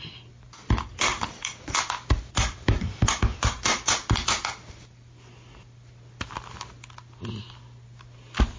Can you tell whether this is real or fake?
real